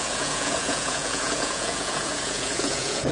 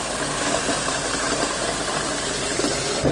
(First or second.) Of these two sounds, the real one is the second